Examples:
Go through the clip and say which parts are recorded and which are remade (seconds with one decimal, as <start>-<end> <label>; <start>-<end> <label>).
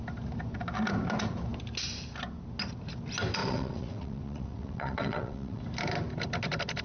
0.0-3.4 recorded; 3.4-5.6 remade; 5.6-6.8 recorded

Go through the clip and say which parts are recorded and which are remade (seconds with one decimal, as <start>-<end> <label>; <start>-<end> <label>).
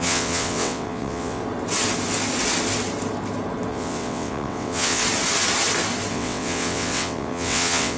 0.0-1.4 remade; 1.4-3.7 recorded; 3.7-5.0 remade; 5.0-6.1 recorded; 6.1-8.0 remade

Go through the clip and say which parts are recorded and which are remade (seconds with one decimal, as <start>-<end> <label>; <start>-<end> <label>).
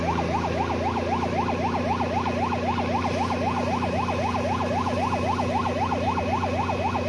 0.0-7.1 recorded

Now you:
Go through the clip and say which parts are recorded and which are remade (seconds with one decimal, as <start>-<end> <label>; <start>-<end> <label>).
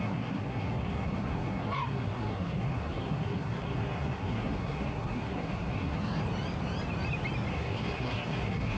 0.0-6.2 remade; 6.2-7.5 recorded; 7.5-8.8 remade